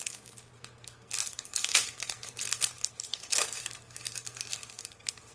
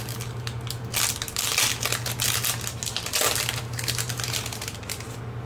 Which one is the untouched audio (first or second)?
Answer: second